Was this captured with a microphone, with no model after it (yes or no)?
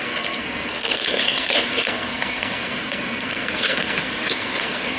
no